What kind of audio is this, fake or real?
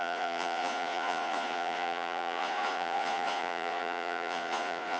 fake